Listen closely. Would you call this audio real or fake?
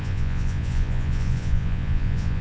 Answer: fake